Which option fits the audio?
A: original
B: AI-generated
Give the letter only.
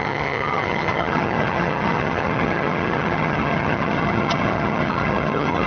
B